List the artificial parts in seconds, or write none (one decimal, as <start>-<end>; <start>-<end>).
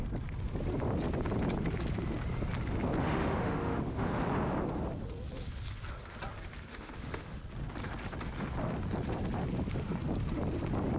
3.0-4.1; 6.7-7.4